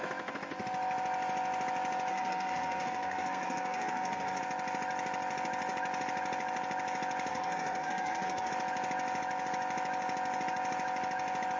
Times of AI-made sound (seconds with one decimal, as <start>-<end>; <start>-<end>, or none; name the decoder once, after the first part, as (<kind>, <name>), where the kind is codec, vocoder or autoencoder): 2.1-4.4 (codec, SNAC); 7.3-8.5